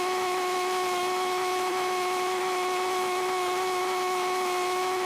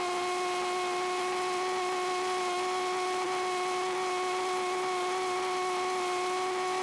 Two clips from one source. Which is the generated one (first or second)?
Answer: first